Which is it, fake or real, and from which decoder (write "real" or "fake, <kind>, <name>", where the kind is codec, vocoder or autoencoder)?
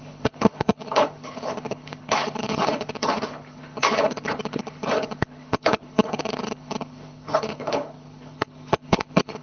fake, codec, HILCodec